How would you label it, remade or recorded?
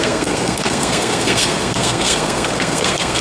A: remade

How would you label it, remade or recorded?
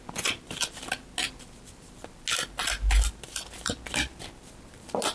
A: recorded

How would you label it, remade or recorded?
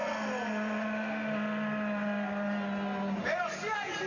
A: recorded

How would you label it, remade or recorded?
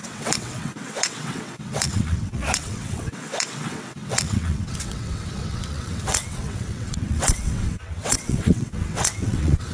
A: remade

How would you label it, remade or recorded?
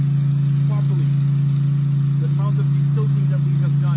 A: recorded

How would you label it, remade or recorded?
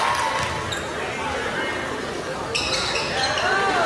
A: recorded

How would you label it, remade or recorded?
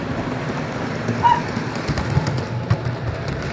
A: recorded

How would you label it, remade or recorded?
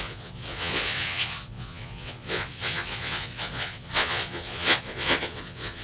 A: remade